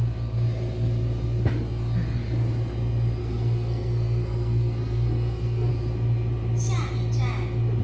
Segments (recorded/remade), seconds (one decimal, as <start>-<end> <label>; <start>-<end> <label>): 0.0-3.2 recorded; 3.2-5.7 remade; 5.7-7.8 recorded